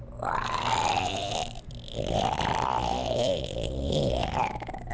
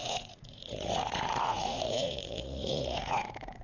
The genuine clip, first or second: first